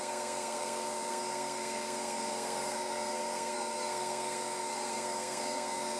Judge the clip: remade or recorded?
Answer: remade